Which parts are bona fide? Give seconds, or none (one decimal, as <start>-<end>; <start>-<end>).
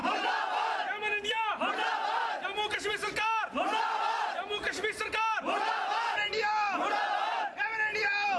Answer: 0.0-8.4